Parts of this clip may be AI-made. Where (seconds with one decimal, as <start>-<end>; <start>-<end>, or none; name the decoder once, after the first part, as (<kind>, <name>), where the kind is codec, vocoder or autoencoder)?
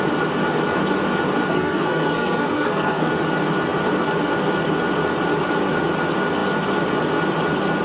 1.5-3.1 (codec, SNAC)